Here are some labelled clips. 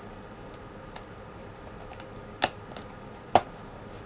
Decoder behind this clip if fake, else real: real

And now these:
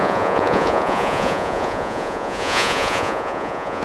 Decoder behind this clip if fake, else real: fake, vocoder, Vocos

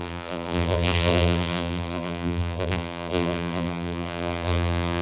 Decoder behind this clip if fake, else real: fake, vocoder, BigVGAN v2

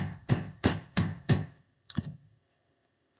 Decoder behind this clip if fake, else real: fake, codec, ZipCodec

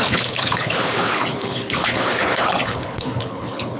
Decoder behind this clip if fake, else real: fake, codec, HILCodec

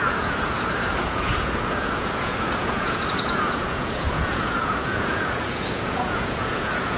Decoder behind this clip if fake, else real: fake, vocoder, Vocos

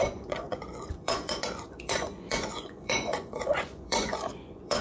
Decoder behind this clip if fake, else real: fake, vocoder, Vocos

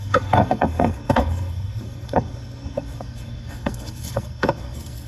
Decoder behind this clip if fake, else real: fake, codec, SNAC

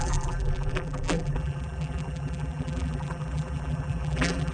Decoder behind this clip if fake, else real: fake, vocoder, BigVGAN v2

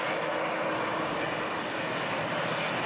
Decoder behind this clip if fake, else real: real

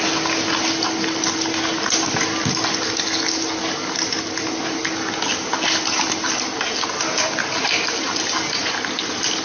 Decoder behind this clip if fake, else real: real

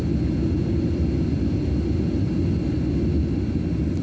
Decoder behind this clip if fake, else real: real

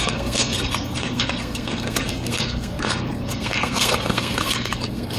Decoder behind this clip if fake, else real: fake, codec, SNAC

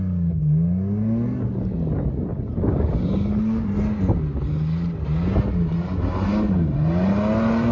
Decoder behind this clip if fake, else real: real